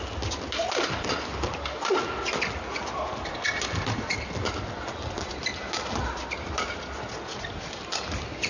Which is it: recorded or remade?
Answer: recorded